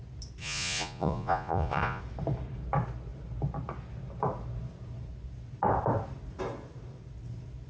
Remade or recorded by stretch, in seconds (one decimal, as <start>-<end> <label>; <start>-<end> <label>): 0.0-0.4 recorded; 0.4-2.0 remade; 2.0-7.7 recorded